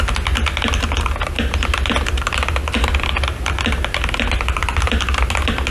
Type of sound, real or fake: real